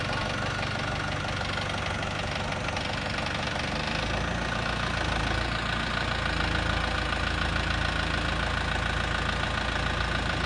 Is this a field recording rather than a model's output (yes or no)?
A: yes